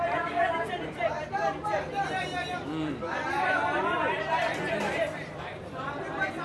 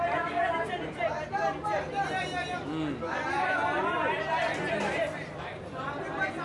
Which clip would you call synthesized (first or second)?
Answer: first